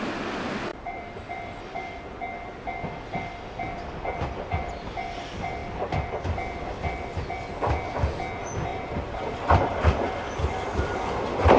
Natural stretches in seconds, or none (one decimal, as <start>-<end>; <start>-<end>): 0.0-0.7; 1.3-8.7; 9.2-11.6